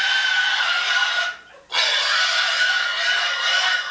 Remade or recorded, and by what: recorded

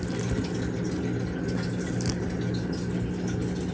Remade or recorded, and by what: recorded